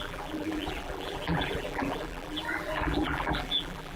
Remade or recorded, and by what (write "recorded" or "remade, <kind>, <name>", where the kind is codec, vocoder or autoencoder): remade, vocoder, BigVGAN v2